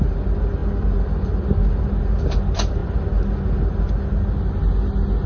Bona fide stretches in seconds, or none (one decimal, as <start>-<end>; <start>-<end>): 0.0-5.3